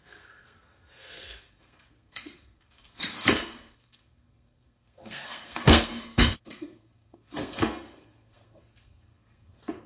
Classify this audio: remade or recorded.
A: remade